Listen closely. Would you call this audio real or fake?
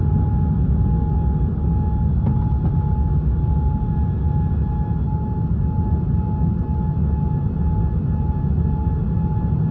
real